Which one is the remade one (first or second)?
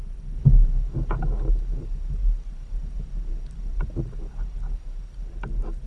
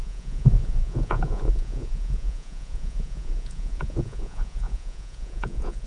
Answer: second